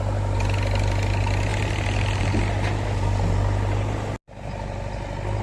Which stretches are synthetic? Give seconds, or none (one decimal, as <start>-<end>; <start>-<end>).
none